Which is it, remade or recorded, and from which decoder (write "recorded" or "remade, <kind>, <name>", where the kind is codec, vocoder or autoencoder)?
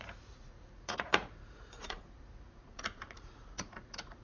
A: remade, vocoder, Vocos